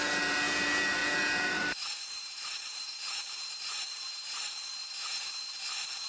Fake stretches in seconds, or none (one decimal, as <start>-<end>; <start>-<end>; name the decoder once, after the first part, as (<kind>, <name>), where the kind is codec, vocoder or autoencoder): 0.0-6.1 (vocoder, BigVGAN v2)